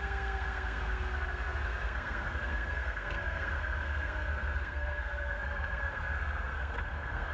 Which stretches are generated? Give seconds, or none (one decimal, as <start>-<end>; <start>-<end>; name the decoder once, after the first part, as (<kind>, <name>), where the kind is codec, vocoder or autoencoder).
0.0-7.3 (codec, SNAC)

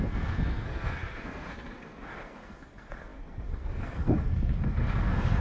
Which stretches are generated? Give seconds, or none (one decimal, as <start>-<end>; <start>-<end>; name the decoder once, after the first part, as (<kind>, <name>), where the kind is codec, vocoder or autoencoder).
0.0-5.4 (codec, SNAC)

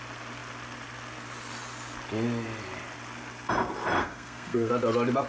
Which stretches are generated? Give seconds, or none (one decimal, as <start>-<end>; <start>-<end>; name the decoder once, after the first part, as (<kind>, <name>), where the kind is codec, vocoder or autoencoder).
4.0-4.7 (codec, SNAC)

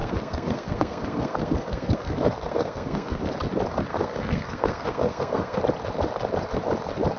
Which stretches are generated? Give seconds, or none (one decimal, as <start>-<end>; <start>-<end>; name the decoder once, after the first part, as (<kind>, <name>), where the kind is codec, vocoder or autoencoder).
0.0-3.2 (codec, SNAC); 3.9-5.6

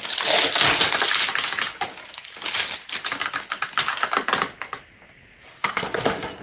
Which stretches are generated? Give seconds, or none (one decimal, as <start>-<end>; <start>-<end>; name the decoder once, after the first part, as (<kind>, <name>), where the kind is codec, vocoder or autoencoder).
5.5-6.4 (codec, SNAC)

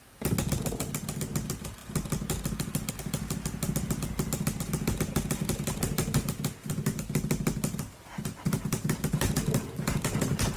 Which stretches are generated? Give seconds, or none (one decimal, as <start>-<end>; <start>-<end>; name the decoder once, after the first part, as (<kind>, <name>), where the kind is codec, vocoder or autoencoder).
none